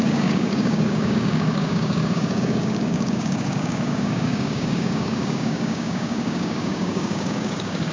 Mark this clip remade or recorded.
remade